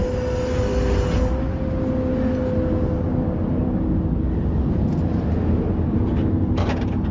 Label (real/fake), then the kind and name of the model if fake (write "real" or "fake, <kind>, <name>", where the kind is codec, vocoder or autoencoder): real